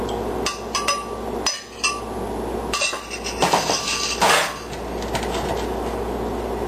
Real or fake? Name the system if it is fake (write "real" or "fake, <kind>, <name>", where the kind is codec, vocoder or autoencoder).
real